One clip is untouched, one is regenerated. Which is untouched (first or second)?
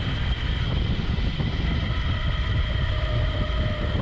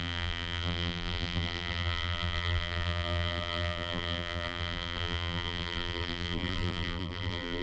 first